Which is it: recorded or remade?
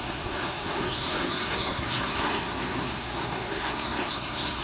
remade